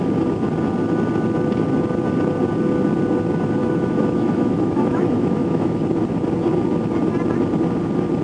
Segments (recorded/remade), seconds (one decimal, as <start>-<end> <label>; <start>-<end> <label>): 0.0-3.6 recorded; 3.6-5.8 remade; 5.8-8.2 recorded